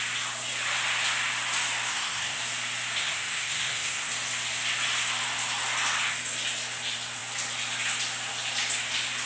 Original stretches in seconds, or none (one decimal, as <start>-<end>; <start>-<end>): 0.0-1.9; 2.4-3.0; 4.1-9.3